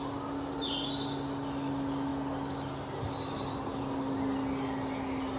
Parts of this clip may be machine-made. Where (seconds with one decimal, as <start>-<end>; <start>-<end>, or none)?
none